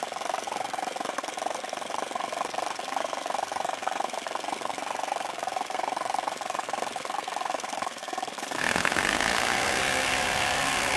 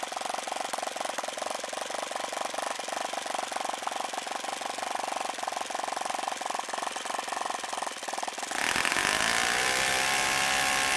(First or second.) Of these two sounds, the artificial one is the first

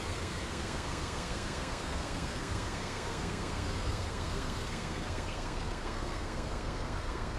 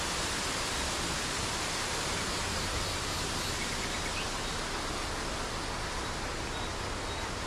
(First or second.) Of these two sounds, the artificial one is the first